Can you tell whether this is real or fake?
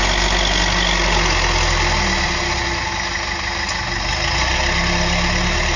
real